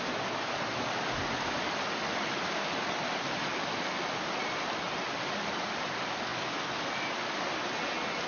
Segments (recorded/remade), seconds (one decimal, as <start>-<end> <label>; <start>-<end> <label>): 0.0-8.3 recorded